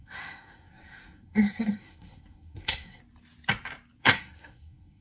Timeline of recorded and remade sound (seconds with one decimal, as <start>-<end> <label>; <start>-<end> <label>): 0.0-3.0 remade; 3.0-4.0 recorded; 4.0-5.0 remade